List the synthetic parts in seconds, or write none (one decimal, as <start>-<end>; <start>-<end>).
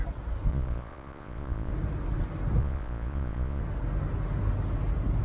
0.5-1.7; 2.6-3.6